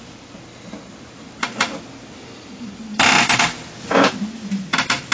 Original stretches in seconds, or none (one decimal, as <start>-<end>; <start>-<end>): 0.0-5.1